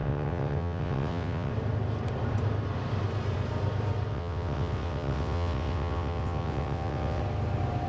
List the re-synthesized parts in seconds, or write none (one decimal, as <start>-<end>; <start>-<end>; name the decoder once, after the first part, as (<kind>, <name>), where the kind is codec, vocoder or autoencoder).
0.0-1.5 (vocoder, WaveNeXt); 4.1-7.2